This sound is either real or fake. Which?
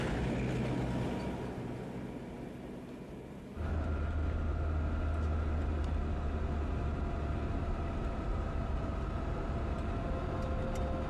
real